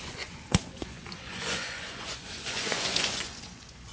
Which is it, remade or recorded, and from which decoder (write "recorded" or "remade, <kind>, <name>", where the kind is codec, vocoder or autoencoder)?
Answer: remade, vocoder, Vocos